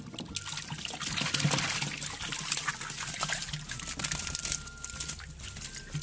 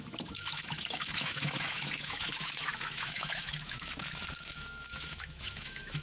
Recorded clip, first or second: first